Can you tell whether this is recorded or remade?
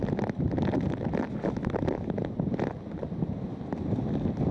recorded